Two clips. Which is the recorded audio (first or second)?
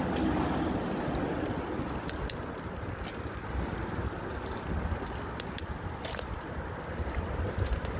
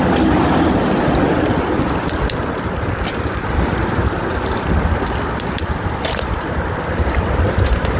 first